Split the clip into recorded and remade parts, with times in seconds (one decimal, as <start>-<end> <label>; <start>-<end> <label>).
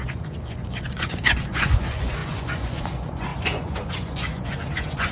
0.0-5.1 remade